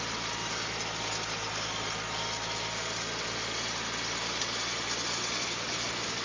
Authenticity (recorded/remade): recorded